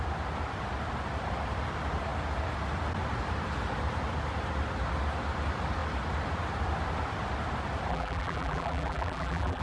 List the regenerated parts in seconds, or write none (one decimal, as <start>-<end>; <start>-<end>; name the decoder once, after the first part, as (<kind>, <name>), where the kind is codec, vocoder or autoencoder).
7.9-9.6 (vocoder, BigVGAN v2)